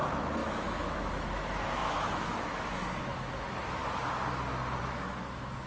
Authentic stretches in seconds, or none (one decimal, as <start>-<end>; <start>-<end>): 3.8-4.8